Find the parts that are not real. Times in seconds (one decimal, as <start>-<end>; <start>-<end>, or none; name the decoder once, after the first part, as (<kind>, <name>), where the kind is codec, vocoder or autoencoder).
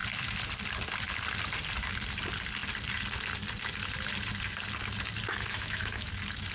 5.4-6.1 (autoencoder, DAC-VAE)